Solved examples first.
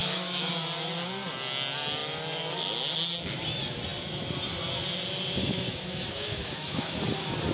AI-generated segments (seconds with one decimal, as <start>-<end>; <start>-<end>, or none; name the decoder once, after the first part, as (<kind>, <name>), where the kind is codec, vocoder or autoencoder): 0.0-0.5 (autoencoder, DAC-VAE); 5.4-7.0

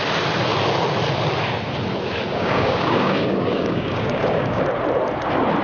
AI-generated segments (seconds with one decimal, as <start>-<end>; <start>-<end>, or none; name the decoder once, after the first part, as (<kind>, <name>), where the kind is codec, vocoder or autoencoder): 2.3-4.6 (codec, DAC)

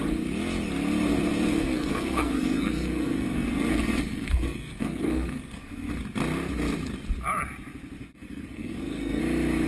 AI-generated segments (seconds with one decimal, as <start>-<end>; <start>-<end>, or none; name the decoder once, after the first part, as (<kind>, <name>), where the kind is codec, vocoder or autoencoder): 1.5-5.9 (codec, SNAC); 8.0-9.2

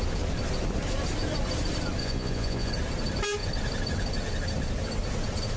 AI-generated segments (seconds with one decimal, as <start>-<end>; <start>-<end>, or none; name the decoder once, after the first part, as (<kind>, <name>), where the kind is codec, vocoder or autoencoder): 2.0-2.7 (vocoder, Vocos)

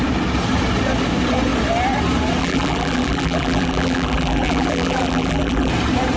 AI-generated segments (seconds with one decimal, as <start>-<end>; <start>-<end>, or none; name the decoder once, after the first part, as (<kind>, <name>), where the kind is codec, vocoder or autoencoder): 2.4-5.7 (vocoder, BigVGAN v2)

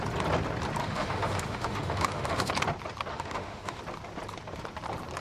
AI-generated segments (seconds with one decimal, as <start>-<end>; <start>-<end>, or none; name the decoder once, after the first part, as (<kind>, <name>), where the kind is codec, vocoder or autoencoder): 0.8-2.5 (autoencoder, DAC-VAE); 3.1-3.8

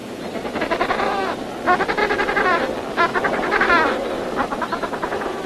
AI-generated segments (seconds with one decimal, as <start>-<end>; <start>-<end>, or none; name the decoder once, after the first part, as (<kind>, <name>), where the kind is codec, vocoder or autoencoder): 0.0-0.6 (vocoder, BigVGAN v2); 2.0-2.7; 3.1-5.5

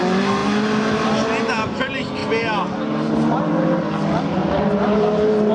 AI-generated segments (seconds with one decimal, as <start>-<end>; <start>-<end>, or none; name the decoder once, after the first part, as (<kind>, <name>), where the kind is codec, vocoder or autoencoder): none